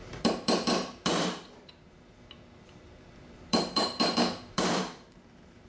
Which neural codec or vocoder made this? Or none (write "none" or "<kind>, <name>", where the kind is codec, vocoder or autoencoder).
vocoder, BigVGAN v2